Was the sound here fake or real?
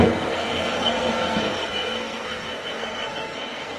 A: fake